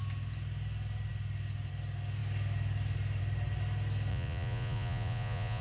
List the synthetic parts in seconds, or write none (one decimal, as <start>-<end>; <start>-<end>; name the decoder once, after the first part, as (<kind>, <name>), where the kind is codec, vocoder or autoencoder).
4.1-5.6 (vocoder, Vocos)